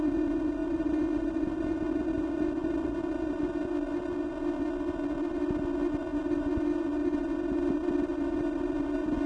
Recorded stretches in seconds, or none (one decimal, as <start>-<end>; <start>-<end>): 0.0-9.3